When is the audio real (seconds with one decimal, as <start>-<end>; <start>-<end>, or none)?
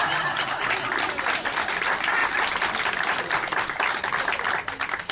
0.0-5.1